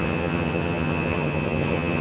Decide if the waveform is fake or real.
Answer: fake